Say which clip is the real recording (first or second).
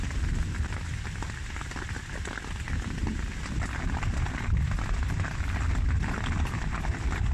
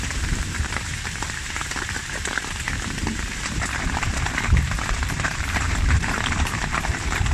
first